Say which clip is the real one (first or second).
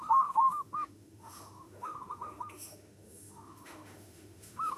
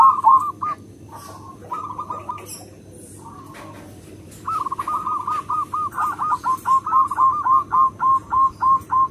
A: second